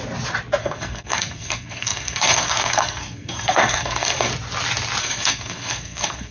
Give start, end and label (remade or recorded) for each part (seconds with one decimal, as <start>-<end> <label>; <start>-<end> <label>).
0.0-0.6 recorded; 0.6-4.3 remade; 4.3-5.0 recorded; 5.0-6.3 remade